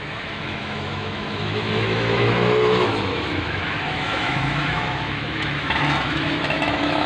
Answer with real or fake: fake